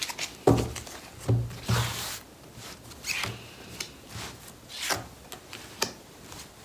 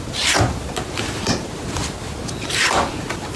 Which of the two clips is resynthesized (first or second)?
second